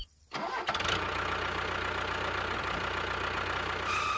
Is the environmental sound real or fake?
real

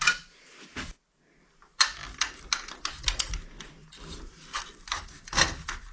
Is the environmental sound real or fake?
real